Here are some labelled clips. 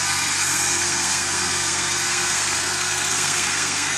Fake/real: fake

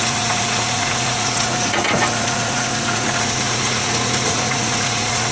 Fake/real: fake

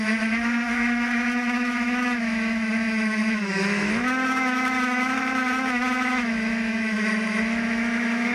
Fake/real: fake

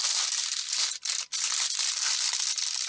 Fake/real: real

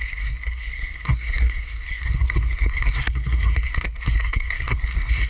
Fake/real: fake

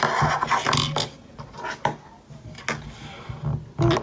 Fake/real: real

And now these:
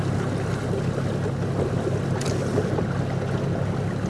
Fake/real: real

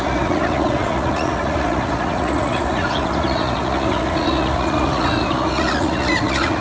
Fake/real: fake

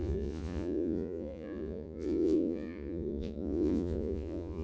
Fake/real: fake